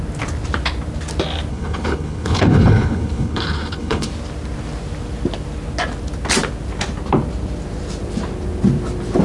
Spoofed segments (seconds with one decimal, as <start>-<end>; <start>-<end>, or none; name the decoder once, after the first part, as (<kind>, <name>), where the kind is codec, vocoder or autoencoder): 1.5-4.1 (codec, HILCodec)